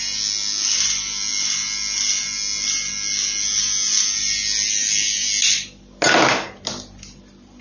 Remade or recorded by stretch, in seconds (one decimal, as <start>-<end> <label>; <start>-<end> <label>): 0.0-7.6 recorded

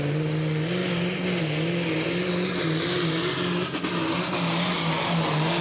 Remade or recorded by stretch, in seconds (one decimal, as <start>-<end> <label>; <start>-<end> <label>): 0.0-5.6 recorded